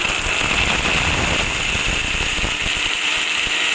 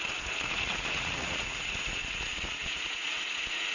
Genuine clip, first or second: first